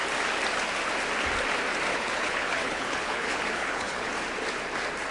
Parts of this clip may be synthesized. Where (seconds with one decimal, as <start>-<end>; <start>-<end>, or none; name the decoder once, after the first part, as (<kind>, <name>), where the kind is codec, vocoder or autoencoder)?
1.9-4.1 (codec, HILCodec)